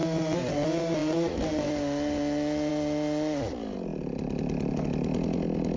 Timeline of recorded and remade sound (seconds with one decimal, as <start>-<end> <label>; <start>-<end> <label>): 0.0-5.8 recorded